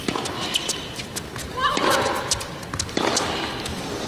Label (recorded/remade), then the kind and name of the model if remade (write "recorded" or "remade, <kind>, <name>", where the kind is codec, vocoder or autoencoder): recorded